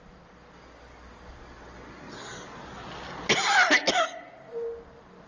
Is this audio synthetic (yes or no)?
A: no